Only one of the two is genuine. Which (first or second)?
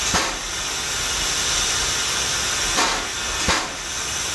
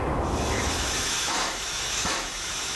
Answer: first